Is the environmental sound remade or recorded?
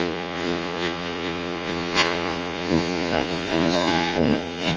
remade